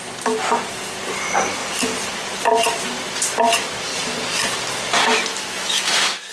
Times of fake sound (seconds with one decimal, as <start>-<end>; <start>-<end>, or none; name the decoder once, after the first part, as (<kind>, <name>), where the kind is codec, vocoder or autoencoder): 5.3-6.3 (autoencoder, DAC-VAE)

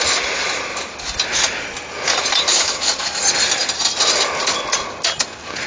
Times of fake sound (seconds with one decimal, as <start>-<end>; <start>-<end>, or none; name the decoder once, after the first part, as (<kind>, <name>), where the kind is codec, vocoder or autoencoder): 2.5-3.2 (autoencoder, DAC-VAE)

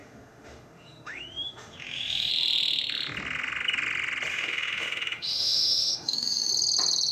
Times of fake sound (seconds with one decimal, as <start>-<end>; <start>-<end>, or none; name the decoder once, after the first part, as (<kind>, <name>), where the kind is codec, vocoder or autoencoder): 0.0-2.3 (autoencoder, DAC-VAE); 4.3-6.5

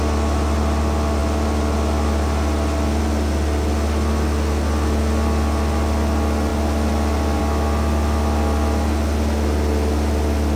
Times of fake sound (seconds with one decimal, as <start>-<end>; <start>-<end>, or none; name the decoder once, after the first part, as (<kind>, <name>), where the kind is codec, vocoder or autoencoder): none

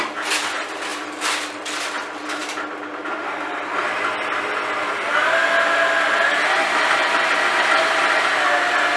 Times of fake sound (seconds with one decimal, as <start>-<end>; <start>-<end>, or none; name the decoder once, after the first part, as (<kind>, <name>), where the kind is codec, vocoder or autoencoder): none